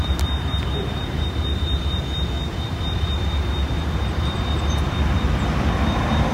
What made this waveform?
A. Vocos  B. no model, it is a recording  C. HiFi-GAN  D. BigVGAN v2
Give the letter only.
D